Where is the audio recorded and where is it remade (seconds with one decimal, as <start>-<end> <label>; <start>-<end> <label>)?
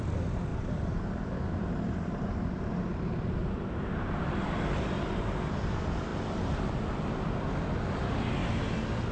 0.0-0.5 recorded; 0.5-5.4 remade; 5.4-6.1 recorded; 6.1-6.7 remade; 6.7-9.1 recorded